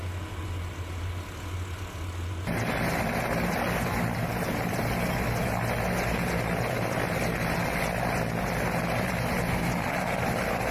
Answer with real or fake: real